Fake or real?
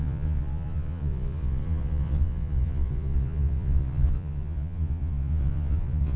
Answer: fake